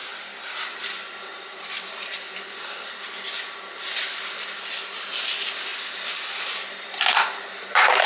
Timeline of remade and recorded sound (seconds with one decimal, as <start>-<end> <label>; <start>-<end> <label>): 0.0-4.3 remade; 4.3-5.7 recorded; 5.7-6.6 remade; 6.6-8.1 recorded